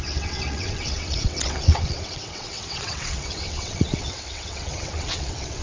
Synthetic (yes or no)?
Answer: yes